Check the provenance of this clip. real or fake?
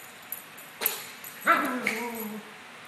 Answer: real